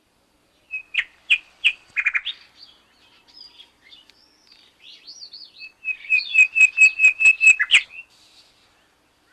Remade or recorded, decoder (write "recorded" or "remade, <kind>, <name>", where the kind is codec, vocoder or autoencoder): recorded